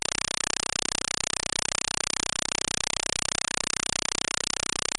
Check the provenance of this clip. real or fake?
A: real